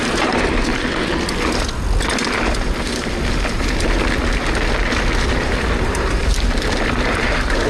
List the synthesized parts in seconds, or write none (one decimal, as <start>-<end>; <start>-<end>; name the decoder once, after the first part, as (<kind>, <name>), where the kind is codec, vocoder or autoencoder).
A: 0.0-0.7 (vocoder, BigVGAN v2); 5.3-6.2; 7.1-7.7